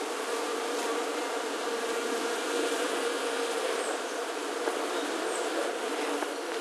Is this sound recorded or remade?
remade